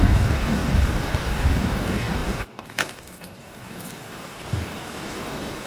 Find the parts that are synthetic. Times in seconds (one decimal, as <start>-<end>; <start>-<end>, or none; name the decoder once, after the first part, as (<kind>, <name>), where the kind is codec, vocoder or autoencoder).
0.0-5.7 (codec, DAC)